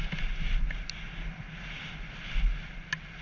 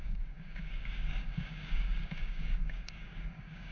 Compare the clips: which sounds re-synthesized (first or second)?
second